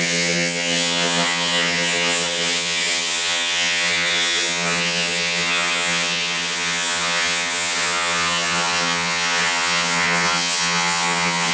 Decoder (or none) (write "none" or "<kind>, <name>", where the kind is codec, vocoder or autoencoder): vocoder, HiFi-GAN